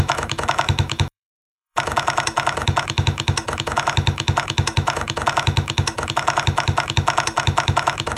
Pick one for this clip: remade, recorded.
remade